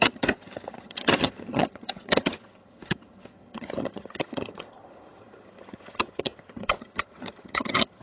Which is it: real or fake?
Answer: fake